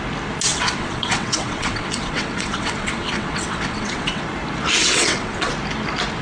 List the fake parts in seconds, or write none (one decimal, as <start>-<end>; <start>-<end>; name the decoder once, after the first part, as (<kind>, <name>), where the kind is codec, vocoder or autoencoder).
0.5-4.2 (vocoder, WaveNeXt); 4.8-5.5